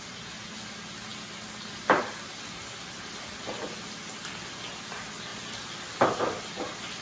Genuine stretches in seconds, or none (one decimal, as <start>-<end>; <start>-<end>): 0.0-5.3; 6.1-7.0